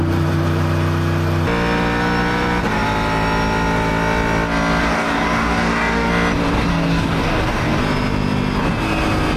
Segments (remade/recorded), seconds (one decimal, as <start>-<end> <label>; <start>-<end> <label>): 0.0-4.8 recorded; 4.8-6.1 remade; 6.1-6.7 recorded; 6.7-7.8 remade; 7.8-9.4 recorded

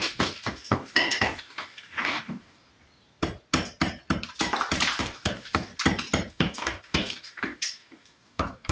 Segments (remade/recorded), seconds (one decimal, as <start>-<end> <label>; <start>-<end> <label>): 0.0-2.7 remade; 2.7-5.0 recorded; 5.0-5.7 remade; 5.7-6.3 recorded; 6.3-8.7 remade

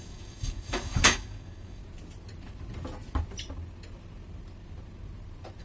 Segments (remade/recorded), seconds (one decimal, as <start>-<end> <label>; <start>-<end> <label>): 0.0-1.8 remade; 1.8-5.6 recorded

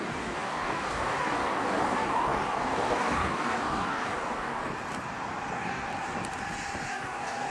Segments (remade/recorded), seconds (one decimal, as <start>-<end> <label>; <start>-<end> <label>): 0.0-4.6 remade; 4.6-5.5 recorded; 5.5-5.9 remade; 5.9-6.9 recorded; 6.9-7.5 remade

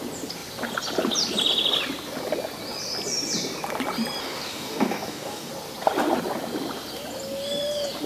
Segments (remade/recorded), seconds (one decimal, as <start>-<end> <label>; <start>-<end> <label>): 0.0-4.2 recorded; 4.2-5.5 remade; 5.5-8.1 recorded

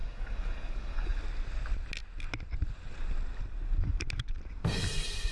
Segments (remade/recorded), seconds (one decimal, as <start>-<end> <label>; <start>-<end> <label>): 0.0-1.2 remade; 1.2-5.3 recorded

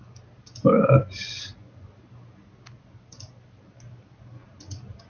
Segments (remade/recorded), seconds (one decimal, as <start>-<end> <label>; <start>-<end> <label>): 0.0-5.1 recorded